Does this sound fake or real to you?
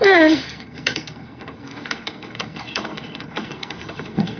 fake